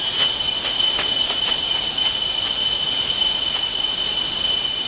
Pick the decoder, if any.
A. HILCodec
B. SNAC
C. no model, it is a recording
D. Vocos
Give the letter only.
C